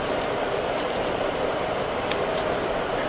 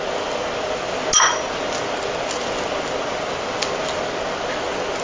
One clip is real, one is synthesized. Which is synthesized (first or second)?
first